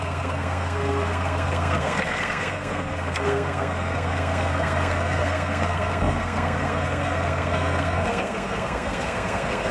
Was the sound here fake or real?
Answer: fake